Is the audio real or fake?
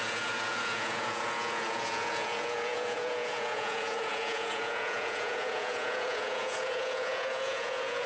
fake